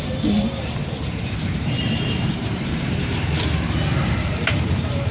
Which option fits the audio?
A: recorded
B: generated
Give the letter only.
B